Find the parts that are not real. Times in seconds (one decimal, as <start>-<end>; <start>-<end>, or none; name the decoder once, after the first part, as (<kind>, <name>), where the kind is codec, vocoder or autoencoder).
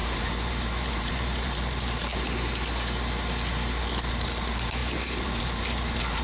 0.0-2.1 (vocoder, BigVGAN v2); 4.1-6.2